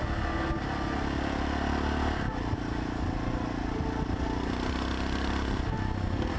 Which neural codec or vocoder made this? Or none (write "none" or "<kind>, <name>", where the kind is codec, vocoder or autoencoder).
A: none